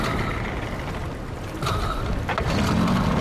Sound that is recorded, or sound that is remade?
recorded